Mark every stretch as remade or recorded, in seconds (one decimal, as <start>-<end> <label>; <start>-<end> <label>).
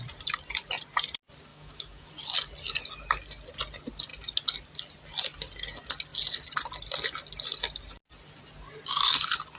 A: 0.0-1.5 recorded; 1.5-2.1 remade; 2.1-9.6 recorded